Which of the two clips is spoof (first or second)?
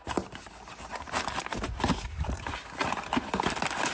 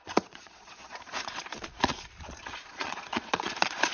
second